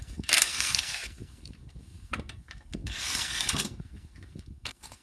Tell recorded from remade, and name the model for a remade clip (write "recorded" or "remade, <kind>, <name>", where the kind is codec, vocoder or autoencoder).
remade, codec, SNAC